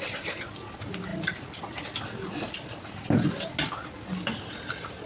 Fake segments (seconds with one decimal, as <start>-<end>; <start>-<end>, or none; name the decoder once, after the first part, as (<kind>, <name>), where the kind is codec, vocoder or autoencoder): none